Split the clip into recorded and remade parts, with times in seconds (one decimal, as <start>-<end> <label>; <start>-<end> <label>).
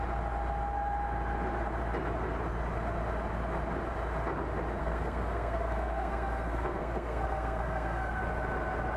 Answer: 0.0-4.8 recorded; 4.8-8.2 remade; 8.2-9.0 recorded